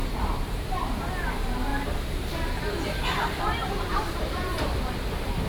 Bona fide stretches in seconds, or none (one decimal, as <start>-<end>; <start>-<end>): 1.1-1.7; 2.3-3.6